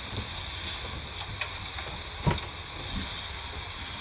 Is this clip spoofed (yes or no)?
no